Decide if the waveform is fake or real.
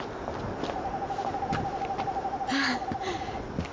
real